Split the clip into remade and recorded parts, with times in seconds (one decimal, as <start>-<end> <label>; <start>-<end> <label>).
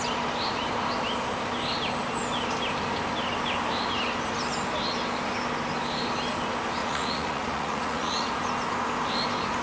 0.0-6.8 recorded; 6.8-8.3 remade; 8.3-9.6 recorded